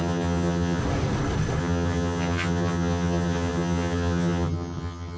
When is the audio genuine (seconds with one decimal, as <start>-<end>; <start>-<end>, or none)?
0.8-1.6